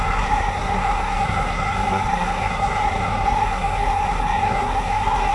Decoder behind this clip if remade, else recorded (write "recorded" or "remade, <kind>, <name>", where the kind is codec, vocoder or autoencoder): remade, codec, SNAC